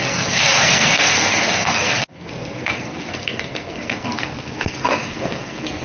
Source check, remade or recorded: remade